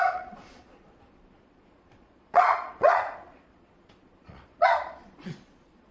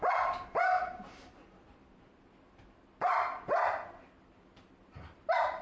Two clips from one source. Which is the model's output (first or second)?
first